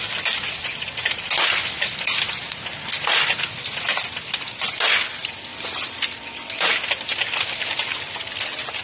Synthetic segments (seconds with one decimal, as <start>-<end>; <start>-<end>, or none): none